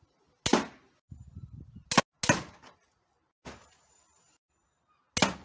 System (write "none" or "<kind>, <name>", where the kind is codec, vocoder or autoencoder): none